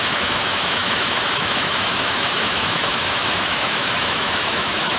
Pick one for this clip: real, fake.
fake